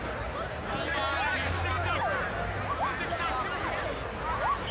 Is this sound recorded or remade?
recorded